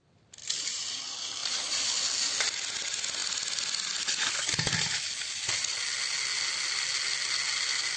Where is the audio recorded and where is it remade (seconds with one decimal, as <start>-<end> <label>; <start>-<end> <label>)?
0.0-0.4 recorded; 0.4-1.0 remade; 1.0-1.4 recorded; 1.4-1.9 remade; 1.9-8.0 recorded